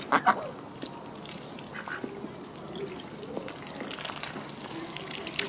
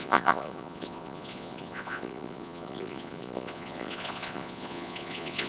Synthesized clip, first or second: second